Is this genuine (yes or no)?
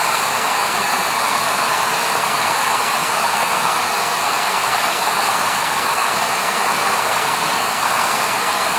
no